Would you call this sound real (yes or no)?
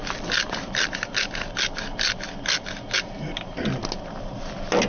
yes